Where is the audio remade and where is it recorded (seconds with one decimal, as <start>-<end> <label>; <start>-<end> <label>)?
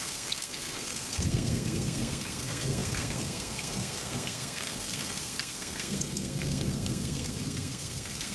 0.0-8.3 remade